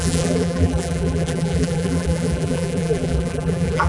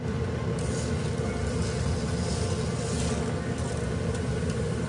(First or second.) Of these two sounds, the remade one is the first